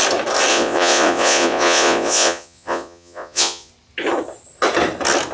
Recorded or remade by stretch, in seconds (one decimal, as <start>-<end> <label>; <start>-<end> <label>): 0.0-0.5 recorded; 0.5-3.7 remade; 3.7-5.3 recorded